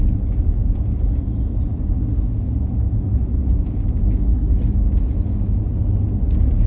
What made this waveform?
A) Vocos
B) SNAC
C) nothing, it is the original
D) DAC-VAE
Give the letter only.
C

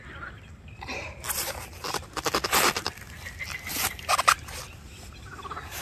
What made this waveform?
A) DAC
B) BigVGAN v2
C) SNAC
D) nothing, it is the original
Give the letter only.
B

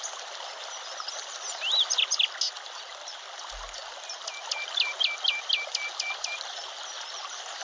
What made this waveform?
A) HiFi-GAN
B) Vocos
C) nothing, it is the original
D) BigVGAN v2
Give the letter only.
C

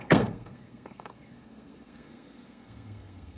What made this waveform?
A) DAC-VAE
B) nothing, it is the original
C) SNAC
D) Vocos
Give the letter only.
C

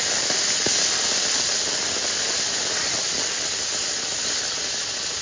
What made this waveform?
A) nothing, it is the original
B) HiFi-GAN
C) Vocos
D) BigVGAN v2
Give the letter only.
A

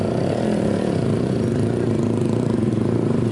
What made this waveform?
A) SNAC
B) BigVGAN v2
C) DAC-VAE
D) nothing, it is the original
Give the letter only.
B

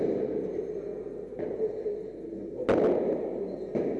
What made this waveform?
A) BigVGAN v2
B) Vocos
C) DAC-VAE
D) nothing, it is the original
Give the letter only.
D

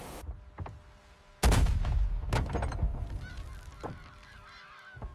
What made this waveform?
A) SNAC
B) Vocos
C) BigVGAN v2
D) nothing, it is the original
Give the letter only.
D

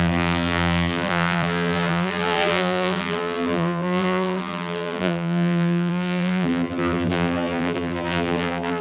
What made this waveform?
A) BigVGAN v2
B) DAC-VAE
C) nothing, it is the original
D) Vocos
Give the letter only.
A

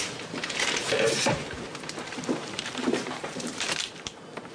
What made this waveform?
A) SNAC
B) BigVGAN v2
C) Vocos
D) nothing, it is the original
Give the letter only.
B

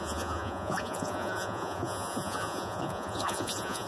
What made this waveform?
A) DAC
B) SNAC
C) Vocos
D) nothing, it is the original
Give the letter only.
C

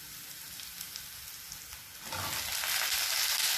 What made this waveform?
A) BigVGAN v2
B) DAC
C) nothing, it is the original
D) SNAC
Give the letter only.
C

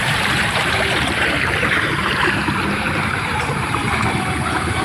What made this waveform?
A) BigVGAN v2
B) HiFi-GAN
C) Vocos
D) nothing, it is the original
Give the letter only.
A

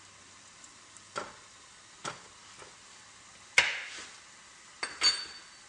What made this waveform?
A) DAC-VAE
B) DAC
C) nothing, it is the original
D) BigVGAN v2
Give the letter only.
C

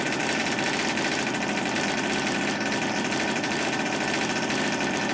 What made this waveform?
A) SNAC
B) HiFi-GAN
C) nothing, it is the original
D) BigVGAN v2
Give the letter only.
D